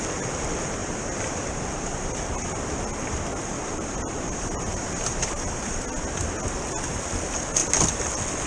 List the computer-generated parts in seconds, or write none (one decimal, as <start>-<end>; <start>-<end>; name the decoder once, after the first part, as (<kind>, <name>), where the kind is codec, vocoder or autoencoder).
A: 0.8-2.2 (vocoder, BigVGAN v2); 3.3-5.8